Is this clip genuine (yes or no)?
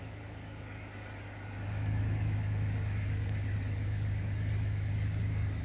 no